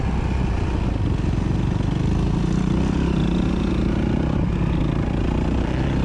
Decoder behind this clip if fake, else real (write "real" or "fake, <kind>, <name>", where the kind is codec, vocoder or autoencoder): real